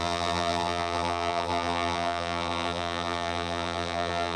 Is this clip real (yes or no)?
no